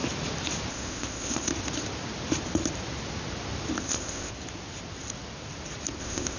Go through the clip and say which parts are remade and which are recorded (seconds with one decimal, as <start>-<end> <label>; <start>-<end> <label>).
0.0-0.7 recorded; 0.7-1.5 remade; 1.5-3.8 recorded; 3.8-4.3 remade; 4.3-6.0 recorded; 6.0-6.4 remade